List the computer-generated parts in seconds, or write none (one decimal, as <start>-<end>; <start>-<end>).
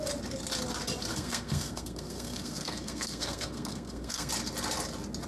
1.1-4.3